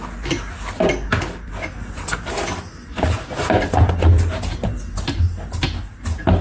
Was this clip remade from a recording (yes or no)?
no